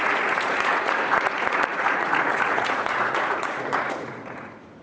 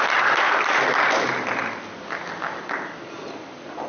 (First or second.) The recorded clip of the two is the second